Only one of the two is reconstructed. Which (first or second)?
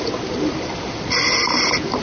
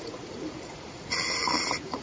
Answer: second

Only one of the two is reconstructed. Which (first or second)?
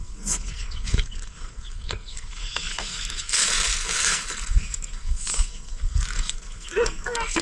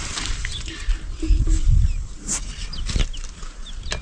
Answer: first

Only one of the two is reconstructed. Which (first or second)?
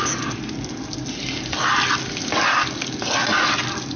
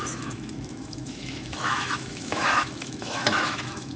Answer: second